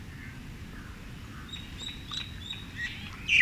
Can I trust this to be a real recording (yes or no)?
yes